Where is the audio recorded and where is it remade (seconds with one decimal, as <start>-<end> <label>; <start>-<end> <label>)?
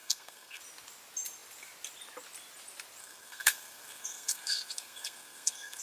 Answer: 0.0-0.6 remade; 0.6-3.0 recorded; 3.0-5.8 remade